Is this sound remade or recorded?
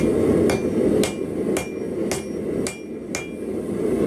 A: recorded